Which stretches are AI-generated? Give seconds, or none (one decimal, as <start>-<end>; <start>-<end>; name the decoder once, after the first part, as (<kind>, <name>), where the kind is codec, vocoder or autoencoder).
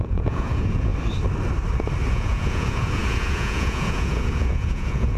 0.0-0.9 (vocoder, Vocos); 2.1-5.2